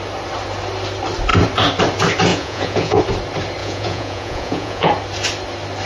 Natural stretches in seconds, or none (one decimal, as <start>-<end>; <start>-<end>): 0.0-2.3; 3.0-3.6; 4.9-5.9